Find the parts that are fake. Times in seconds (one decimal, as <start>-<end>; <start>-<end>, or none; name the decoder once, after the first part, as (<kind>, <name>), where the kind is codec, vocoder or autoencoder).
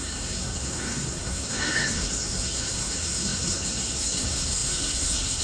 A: 0.0-5.4 (codec, SNAC)